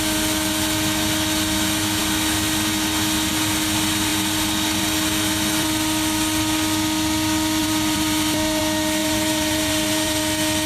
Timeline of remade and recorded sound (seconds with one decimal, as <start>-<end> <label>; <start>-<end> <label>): 0.0-7.6 recorded; 7.6-8.6 remade; 8.6-9.0 recorded; 9.0-10.2 remade; 10.2-10.7 recorded

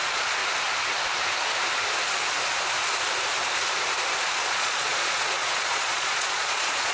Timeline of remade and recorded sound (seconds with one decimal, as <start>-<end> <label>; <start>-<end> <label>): 0.0-0.4 remade; 0.4-4.5 recorded; 4.5-6.9 remade

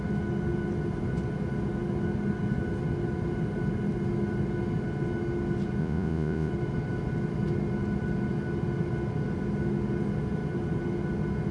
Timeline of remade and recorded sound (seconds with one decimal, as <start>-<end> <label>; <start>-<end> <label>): 0.0-5.8 recorded; 5.8-6.5 remade; 6.5-11.5 recorded

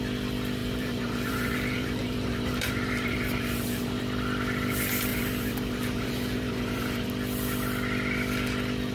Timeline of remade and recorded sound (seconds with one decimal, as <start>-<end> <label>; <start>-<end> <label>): 0.0-0.6 recorded; 0.6-4.0 remade; 4.0-5.1 recorded; 5.1-7.1 remade; 7.1-8.9 recorded

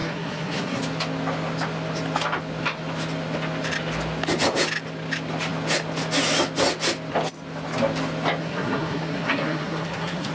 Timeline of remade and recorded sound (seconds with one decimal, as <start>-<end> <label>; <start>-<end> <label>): 0.0-0.8 remade; 0.8-8.4 recorded; 8.4-10.3 remade